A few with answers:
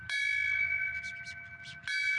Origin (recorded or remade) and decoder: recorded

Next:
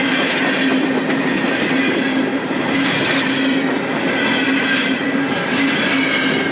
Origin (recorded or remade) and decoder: recorded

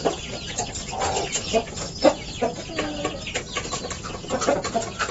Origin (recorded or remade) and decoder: recorded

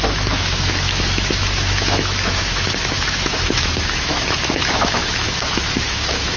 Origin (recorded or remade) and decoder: remade, autoencoder, DAC-VAE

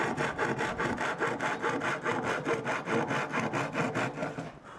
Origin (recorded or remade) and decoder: recorded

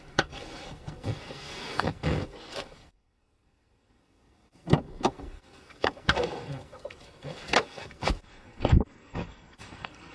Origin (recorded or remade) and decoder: remade, codec, SNAC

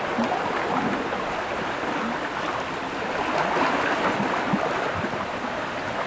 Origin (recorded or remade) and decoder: recorded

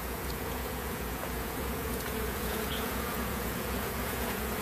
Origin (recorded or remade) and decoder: remade, vocoder, Vocos